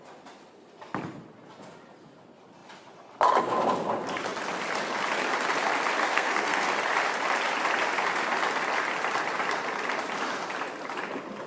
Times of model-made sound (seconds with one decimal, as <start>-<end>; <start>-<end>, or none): 6.0-6.7